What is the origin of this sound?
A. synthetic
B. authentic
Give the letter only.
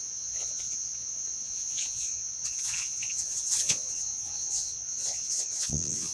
A